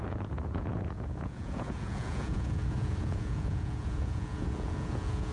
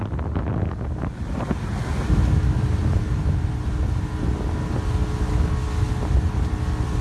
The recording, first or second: second